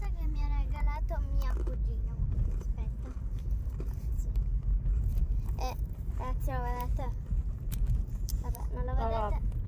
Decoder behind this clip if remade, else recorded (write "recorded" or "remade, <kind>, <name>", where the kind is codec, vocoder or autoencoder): remade, vocoder, BigVGAN v2